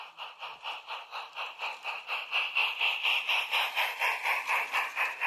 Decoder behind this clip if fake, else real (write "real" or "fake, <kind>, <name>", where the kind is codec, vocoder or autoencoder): real